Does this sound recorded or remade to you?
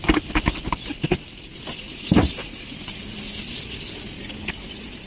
recorded